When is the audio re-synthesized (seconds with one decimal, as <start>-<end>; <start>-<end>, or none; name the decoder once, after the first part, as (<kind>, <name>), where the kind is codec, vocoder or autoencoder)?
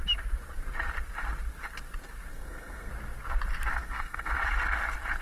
2.3-2.9 (codec, SNAC); 3.7-4.3